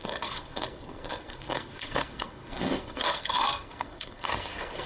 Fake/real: fake